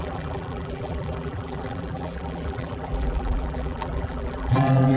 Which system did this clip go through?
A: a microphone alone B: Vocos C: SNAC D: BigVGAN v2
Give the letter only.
D